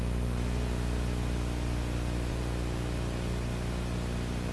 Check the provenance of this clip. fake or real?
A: real